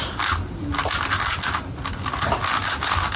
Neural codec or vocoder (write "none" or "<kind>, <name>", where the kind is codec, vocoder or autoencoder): none